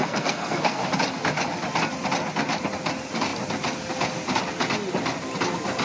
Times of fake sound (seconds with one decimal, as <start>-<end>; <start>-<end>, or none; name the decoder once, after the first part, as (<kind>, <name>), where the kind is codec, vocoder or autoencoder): 0.0-0.8 (codec, SNAC)